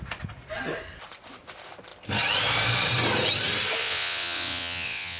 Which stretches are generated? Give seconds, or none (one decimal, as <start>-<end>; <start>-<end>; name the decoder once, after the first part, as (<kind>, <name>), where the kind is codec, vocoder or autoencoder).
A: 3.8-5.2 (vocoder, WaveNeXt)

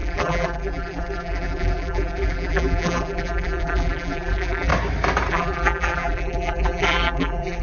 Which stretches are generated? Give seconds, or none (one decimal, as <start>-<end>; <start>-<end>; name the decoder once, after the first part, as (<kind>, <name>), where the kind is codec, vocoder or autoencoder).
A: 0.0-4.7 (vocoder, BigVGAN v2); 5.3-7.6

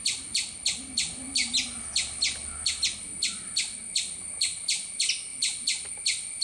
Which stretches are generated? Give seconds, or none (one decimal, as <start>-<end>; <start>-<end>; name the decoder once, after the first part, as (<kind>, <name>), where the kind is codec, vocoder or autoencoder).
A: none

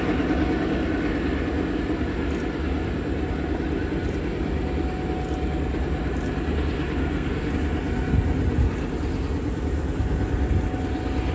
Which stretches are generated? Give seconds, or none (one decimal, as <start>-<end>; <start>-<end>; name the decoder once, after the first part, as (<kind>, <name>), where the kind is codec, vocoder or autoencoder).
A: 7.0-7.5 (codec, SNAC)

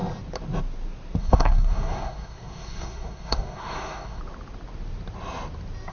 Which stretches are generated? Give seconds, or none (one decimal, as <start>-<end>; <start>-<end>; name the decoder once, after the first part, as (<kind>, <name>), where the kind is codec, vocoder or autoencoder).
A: 1.2-4.2 (codec, SNAC)

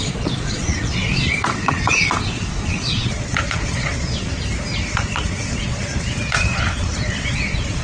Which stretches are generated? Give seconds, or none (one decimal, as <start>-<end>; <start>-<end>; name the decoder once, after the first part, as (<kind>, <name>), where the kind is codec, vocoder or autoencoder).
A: 0.0-4.3 (vocoder, Vocos); 4.9-7.8